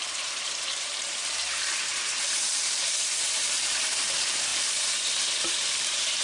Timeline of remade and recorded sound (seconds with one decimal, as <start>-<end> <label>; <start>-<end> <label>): 0.0-4.5 remade; 4.5-5.4 recorded; 5.4-6.2 remade